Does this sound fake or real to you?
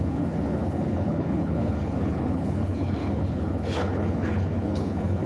fake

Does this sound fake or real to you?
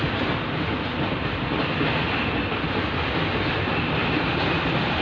real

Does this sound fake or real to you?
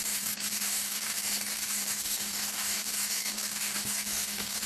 fake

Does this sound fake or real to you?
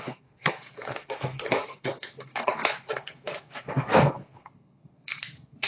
fake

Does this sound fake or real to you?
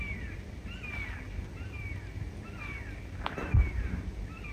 real